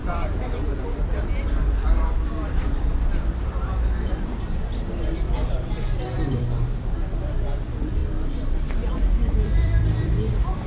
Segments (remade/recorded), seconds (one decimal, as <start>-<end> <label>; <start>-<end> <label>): 0.0-8.0 remade; 8.0-8.7 recorded; 8.7-10.7 remade